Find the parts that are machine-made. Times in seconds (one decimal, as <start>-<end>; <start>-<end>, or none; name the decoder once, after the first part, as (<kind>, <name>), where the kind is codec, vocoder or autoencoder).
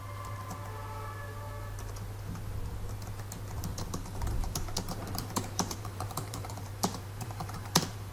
3.7-8.1 (vocoder, BigVGAN v2)